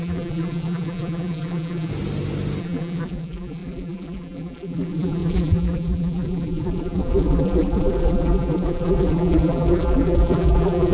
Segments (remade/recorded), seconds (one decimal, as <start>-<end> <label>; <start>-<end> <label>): 0.0-1.9 remade; 1.9-2.6 recorded; 2.6-10.9 remade